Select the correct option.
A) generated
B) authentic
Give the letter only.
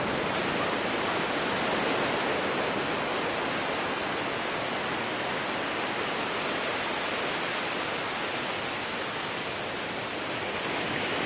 B